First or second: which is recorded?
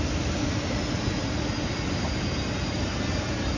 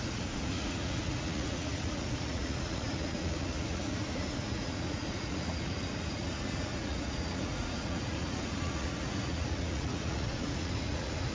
first